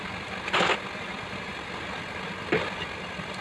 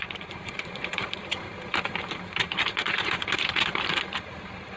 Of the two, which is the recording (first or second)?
first